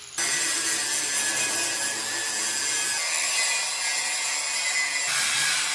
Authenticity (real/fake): real